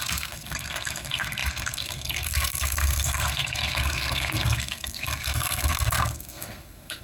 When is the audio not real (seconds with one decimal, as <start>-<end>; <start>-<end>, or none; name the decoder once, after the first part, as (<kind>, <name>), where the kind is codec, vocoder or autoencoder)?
0.0-7.0 (codec, SNAC)